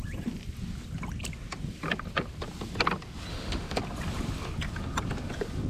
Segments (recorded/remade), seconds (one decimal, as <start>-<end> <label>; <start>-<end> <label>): 0.0-3.3 recorded; 3.3-3.8 remade; 3.8-5.7 recorded